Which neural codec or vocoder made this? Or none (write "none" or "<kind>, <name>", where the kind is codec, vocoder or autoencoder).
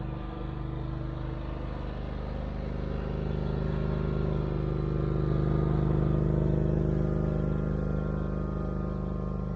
none